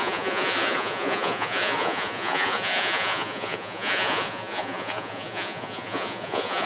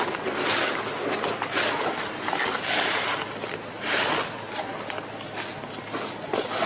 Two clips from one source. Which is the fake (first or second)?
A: first